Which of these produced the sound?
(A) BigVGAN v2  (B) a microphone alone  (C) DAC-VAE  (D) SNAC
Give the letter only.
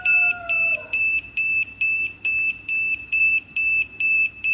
A